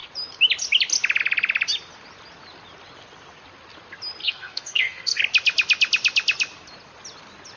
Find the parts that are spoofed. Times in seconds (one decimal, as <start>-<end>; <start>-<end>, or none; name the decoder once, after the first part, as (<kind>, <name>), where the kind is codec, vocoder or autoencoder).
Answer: 4.2-5.2 (codec, SNAC)